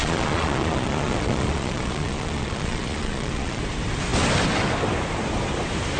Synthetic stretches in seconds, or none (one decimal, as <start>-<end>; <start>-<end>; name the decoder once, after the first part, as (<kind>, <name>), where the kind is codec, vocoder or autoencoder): 0.0-3.6 (vocoder, Vocos)